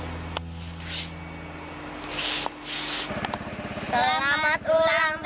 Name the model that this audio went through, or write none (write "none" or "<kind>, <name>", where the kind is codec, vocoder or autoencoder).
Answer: none